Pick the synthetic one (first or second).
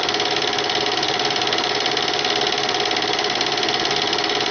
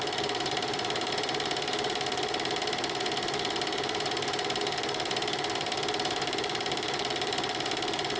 second